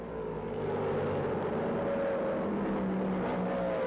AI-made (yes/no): no